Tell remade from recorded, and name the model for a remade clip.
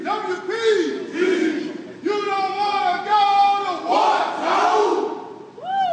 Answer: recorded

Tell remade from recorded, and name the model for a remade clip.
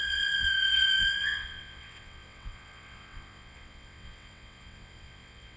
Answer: remade, vocoder, WaveNeXt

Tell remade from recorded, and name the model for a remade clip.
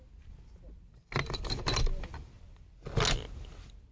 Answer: recorded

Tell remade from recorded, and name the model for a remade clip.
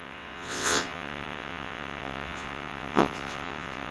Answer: remade, vocoder, WaveNeXt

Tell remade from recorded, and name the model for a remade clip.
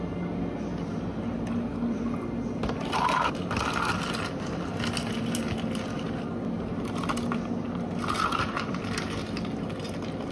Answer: recorded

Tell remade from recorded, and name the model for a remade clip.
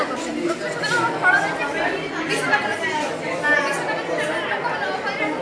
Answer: recorded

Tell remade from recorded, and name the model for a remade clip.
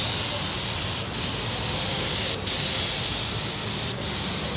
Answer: recorded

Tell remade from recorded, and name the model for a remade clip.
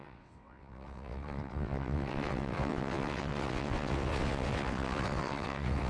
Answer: remade, vocoder, WaveNeXt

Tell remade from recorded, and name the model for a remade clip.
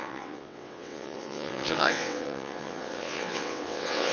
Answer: remade, vocoder, WaveNeXt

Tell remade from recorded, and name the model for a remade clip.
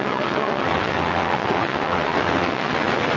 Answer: remade, vocoder, WaveNeXt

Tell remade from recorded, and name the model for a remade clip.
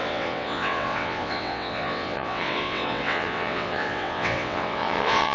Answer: remade, vocoder, WaveNeXt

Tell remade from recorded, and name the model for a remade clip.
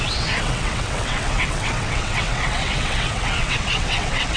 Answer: remade, vocoder, WaveNeXt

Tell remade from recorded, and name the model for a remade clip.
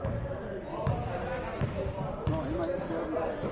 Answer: recorded